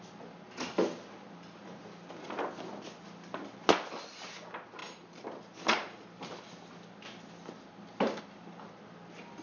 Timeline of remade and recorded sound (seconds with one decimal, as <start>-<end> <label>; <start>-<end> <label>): 0.0-9.4 recorded